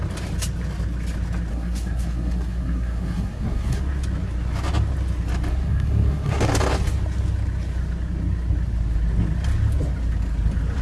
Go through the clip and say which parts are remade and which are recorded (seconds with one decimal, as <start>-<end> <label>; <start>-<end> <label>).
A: 0.0-1.5 recorded; 1.5-3.8 remade; 3.8-5.5 recorded; 5.5-6.5 remade; 6.5-10.8 recorded